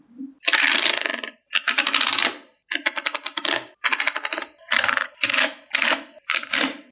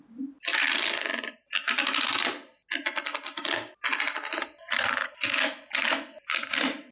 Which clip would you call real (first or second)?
second